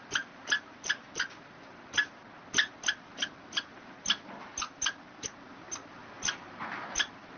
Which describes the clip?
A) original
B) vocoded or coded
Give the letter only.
A